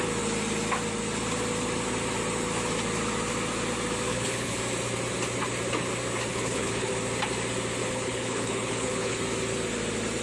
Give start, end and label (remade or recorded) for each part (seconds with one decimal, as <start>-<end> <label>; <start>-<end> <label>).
0.0-4.1 recorded; 4.1-4.6 remade; 4.6-6.3 recorded; 6.3-6.9 remade; 6.9-7.8 recorded; 7.8-9.2 remade; 9.2-10.2 recorded

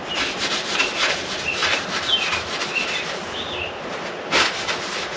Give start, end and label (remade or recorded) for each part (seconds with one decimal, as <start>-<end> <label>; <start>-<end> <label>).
0.0-5.2 recorded

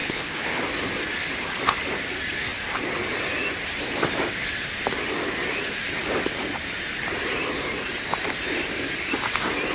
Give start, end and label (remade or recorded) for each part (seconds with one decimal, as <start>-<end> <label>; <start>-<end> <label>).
0.0-0.6 remade; 0.6-9.7 recorded